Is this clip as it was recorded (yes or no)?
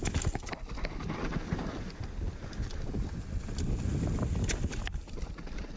yes